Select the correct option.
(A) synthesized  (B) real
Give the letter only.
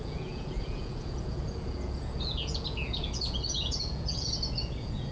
A